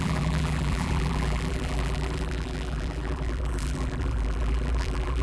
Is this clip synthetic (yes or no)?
yes